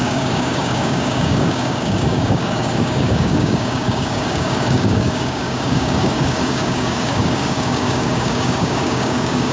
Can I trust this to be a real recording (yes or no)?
no